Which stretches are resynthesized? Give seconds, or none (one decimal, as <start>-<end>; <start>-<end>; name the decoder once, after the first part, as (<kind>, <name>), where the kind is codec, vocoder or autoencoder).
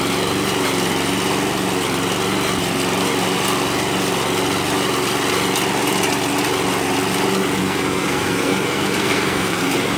7.6-10.0 (codec, SNAC)